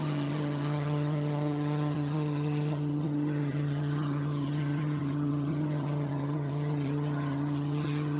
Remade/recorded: remade